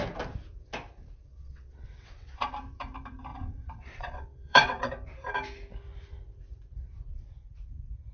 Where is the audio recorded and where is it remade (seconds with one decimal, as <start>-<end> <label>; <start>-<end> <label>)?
0.0-1.3 recorded; 1.3-2.5 remade; 2.5-3.3 recorded; 3.3-4.9 remade; 4.9-8.1 recorded